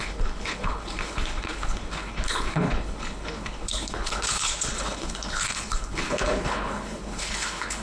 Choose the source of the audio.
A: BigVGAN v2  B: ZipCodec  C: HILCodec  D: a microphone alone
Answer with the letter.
C